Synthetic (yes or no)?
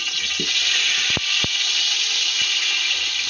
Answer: no